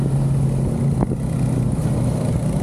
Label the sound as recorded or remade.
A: recorded